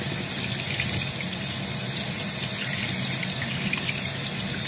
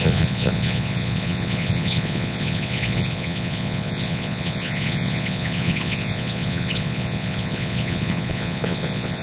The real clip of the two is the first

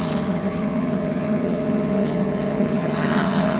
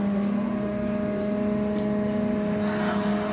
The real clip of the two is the second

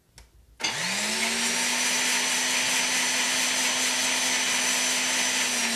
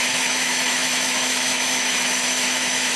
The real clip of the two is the first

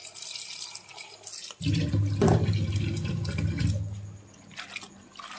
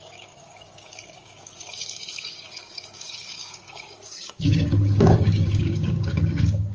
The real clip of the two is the first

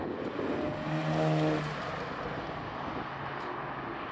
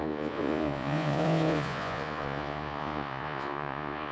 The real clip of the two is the first